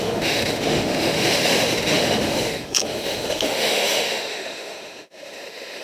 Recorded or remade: remade